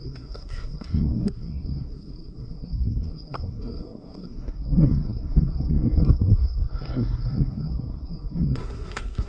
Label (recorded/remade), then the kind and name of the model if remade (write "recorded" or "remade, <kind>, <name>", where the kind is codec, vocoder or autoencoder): remade, codec, SNAC